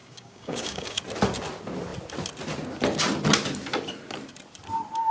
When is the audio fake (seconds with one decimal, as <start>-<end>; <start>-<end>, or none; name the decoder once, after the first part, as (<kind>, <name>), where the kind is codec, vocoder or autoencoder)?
0.0-1.0 (codec, DAC)

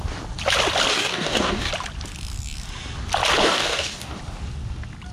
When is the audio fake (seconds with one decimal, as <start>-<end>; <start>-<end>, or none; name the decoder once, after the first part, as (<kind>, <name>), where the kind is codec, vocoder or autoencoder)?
0.9-1.7 (codec, DAC); 3.4-4.2

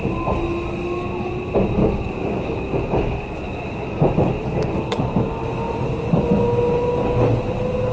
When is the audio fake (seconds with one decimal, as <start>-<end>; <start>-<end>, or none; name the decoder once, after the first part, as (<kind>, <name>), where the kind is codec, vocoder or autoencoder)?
1.8-4.1 (codec, DAC)

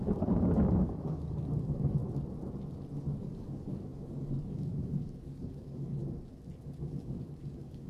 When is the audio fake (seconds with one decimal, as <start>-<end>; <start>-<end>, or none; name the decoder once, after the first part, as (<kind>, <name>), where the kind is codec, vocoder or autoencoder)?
0.0-2.0 (codec, DAC); 3.2-6.0; 6.6-7.9

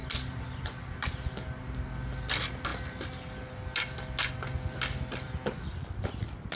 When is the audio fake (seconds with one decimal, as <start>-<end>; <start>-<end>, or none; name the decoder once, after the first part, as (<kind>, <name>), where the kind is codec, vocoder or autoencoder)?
none